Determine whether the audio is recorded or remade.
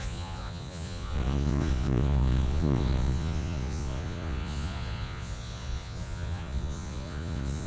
remade